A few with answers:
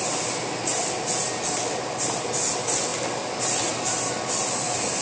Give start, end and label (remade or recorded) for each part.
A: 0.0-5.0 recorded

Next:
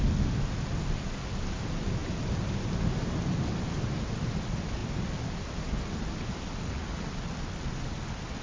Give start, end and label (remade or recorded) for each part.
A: 0.0-8.4 recorded

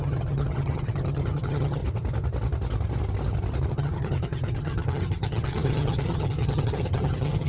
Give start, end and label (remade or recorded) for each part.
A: 0.0-1.8 remade; 1.8-3.7 recorded; 3.7-7.5 remade

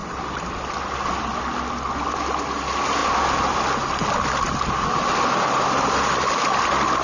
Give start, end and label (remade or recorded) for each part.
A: 0.0-7.0 recorded